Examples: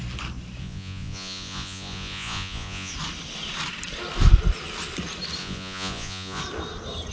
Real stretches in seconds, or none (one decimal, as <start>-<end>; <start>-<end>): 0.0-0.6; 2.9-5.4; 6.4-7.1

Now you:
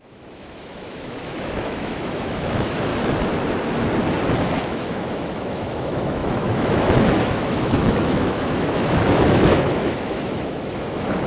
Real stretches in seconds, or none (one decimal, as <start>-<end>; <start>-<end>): 2.9-4.7

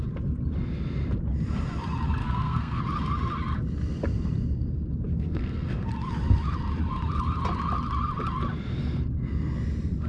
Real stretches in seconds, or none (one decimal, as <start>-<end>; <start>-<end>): 0.0-2.2; 2.8-5.1; 5.9-10.1

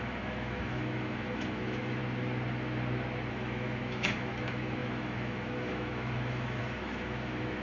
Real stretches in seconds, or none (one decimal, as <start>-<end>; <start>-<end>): 2.0-3.3